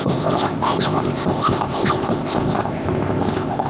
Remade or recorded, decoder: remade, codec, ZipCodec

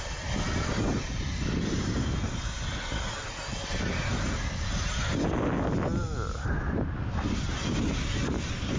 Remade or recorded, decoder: recorded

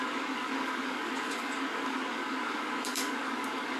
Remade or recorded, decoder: remade, codec, DAC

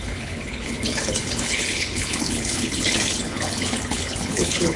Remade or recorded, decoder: remade, codec, HILCodec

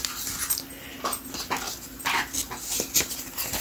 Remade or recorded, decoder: recorded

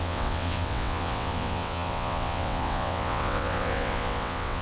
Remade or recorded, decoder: remade, vocoder, WaveNeXt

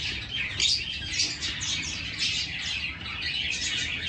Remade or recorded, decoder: recorded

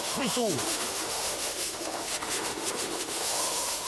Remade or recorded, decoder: remade, autoencoder, DAC-VAE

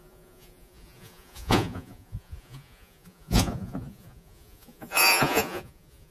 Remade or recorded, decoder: remade, vocoder, Vocos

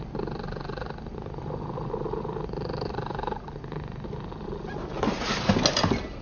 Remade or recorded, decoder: recorded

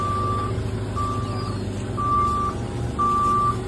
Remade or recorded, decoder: recorded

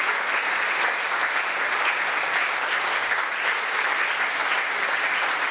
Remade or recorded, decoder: recorded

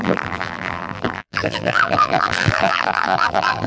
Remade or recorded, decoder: remade, vocoder, BigVGAN v2